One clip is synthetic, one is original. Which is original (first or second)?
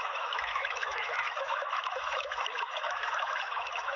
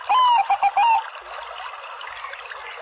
second